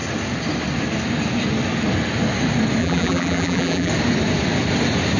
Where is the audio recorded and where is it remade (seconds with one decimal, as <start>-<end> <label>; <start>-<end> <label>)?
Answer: 0.0-2.8 recorded; 2.8-3.9 remade; 3.9-5.2 recorded